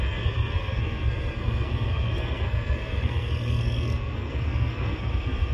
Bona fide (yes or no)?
no